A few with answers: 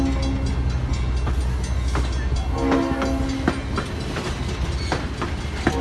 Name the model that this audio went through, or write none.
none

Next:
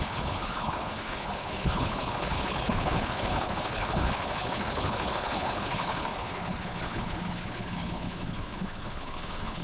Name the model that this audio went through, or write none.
codec, HILCodec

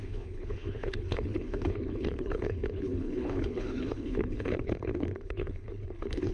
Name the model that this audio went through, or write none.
codec, HILCodec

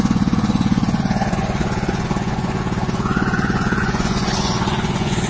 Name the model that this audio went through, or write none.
vocoder, Vocos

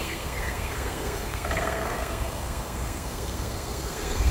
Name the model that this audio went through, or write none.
codec, SNAC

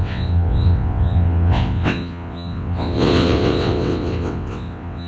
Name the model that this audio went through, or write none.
vocoder, WaveNeXt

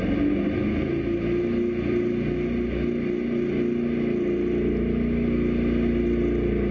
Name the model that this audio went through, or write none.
none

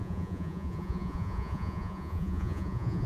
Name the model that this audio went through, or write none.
vocoder, Vocos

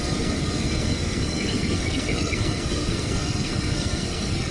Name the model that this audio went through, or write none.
codec, SNAC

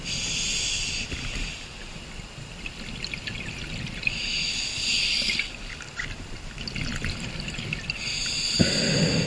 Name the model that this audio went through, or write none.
none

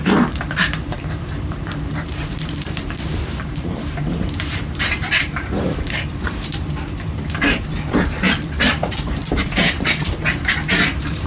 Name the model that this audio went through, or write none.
vocoder, BigVGAN v2